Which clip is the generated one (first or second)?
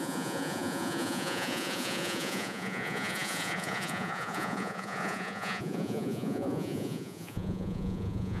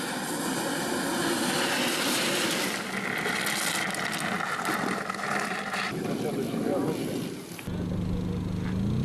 first